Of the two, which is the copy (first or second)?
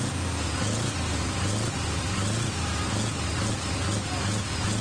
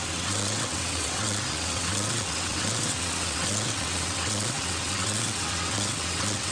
second